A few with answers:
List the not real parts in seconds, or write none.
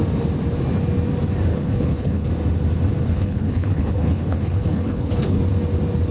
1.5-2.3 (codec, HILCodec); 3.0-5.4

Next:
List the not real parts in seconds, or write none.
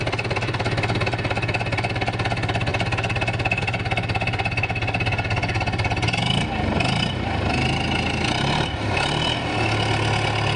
none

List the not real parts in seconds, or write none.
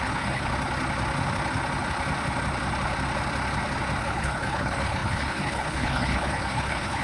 0.0-0.5 (codec, HILCodec); 4.0-7.0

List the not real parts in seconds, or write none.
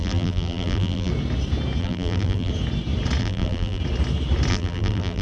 0.0-1.1 (vocoder, BigVGAN v2); 1.8-2.5; 3.2-3.8; 4.5-5.2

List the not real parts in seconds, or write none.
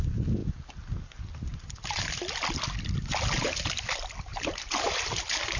none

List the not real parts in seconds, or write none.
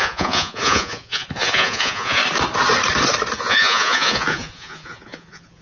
0.0-2.2 (vocoder, Vocos); 3.4-5.6